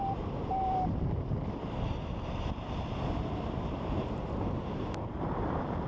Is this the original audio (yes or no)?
no